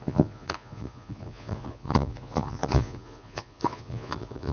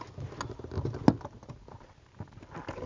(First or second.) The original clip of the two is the second